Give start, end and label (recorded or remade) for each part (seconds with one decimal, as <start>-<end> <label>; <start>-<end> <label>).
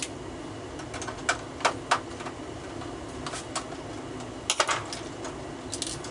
0.0-6.1 recorded